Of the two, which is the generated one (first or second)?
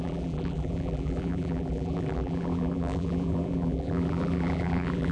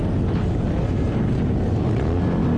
first